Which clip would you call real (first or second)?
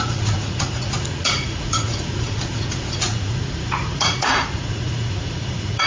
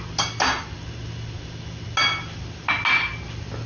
second